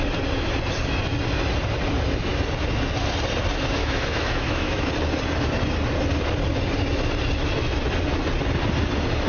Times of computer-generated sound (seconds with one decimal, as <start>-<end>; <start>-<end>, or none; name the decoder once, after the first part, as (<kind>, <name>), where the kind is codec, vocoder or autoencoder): 3.8-4.9 (autoencoder, DAC-VAE)